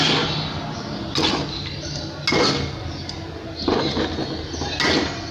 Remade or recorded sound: recorded